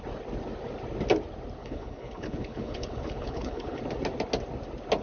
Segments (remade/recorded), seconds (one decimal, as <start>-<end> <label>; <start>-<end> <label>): 0.0-1.6 recorded; 1.6-3.8 remade; 3.8-5.0 recorded